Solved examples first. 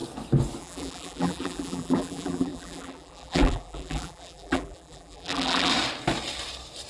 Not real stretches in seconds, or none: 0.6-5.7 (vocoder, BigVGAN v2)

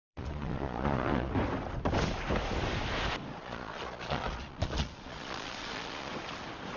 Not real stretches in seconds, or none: 0.0-1.3 (vocoder, Vocos); 3.4-6.1

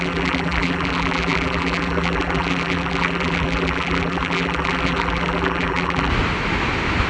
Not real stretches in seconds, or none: 0.0-6.1 (vocoder, BigVGAN v2)

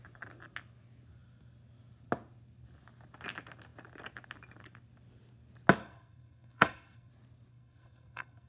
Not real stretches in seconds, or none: 5.8-7.1 (codec, SNAC); 7.5-8.5

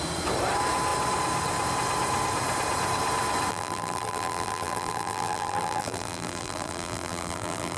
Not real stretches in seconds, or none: 3.5-7.8 (vocoder, BigVGAN v2)

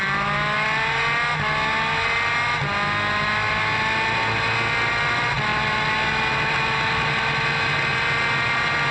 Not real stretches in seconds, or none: none